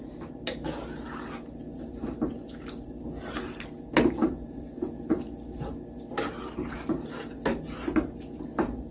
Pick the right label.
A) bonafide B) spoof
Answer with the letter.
A